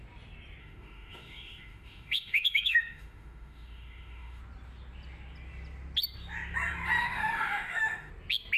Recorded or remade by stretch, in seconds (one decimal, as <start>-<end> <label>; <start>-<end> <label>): 0.0-0.6 recorded; 0.6-4.4 remade; 4.4-7.0 recorded; 7.0-8.1 remade; 8.1-8.6 recorded